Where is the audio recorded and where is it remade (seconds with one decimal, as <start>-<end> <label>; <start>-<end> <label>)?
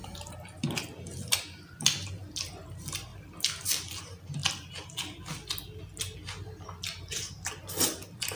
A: 0.0-3.1 recorded; 3.1-4.0 remade; 4.0-8.4 recorded